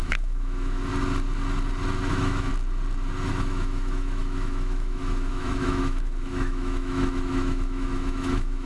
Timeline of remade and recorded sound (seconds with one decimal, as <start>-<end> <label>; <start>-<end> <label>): 0.0-0.9 remade; 0.9-2.1 recorded; 2.1-2.5 remade; 2.5-3.3 recorded; 3.3-8.7 remade